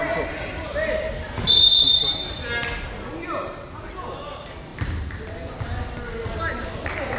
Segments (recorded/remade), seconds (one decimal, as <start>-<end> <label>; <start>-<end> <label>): 0.0-7.2 recorded